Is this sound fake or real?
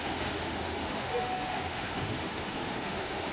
fake